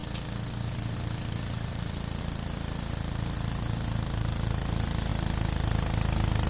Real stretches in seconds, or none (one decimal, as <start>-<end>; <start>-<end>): 0.0-6.5